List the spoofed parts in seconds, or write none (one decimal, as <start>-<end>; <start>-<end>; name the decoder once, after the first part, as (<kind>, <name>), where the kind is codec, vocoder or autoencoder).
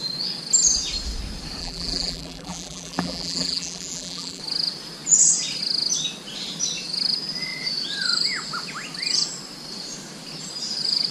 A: 1.6-4.4 (vocoder, BigVGAN v2)